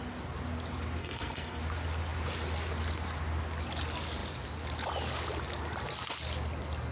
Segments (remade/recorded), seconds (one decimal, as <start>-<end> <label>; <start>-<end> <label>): 0.0-1.0 recorded; 1.0-1.6 remade; 1.6-6.9 recorded

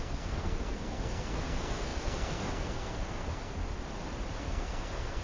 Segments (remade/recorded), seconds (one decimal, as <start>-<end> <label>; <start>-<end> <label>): 0.0-3.6 remade; 3.6-4.4 recorded; 4.4-5.2 remade

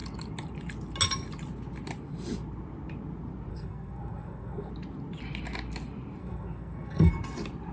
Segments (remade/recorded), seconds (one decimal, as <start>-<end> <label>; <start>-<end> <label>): 0.0-3.5 recorded; 3.5-4.7 remade; 4.7-6.2 recorded; 6.2-7.1 remade; 7.1-7.7 recorded

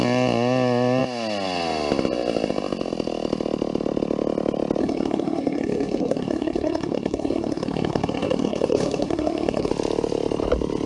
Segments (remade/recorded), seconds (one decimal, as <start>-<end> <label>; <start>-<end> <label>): 0.0-4.8 recorded; 4.8-9.7 remade; 9.7-10.9 recorded

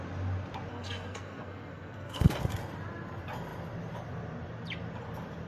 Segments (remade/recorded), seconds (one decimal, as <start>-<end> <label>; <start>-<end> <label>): 0.0-0.7 recorded; 0.7-2.4 remade; 2.4-5.5 recorded

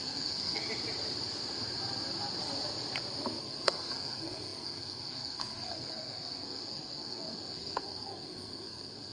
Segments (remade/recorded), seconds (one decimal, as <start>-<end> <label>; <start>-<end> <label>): 0.0-0.6 remade; 0.6-3.4 recorded; 3.4-9.1 remade

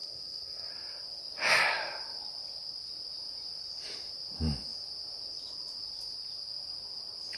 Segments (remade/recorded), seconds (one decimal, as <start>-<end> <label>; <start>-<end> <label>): 0.0-0.7 remade; 0.7-7.4 recorded